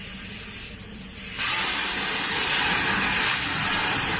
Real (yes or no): yes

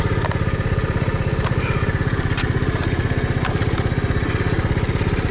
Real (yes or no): yes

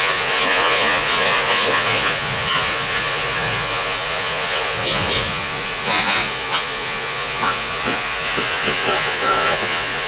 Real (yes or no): no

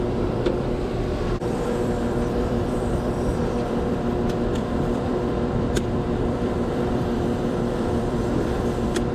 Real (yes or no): no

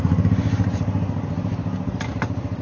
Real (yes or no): yes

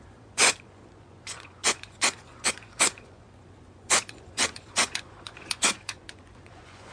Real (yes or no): no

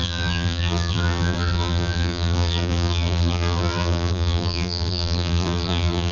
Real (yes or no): no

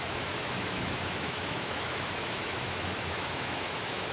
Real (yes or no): no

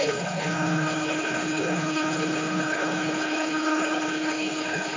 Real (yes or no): no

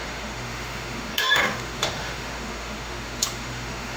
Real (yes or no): no